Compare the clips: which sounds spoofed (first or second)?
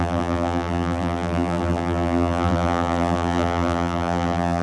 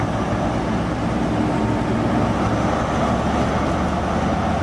first